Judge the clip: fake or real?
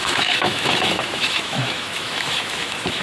fake